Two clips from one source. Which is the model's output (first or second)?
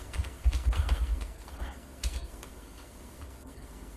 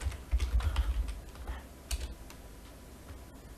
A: first